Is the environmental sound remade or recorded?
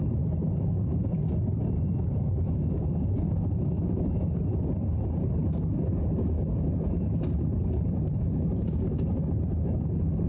recorded